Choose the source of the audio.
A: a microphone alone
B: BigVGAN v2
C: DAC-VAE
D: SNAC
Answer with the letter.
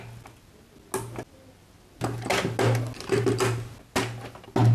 A